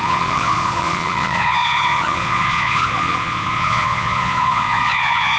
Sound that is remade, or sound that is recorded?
remade